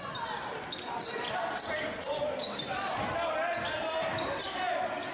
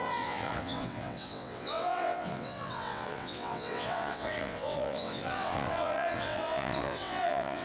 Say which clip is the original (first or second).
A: first